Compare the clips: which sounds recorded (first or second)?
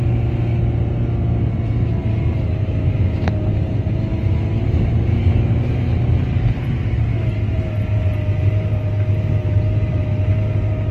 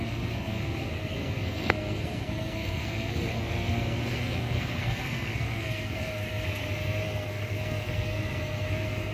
first